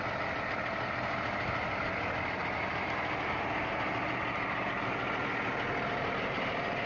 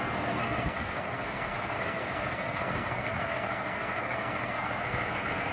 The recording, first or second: first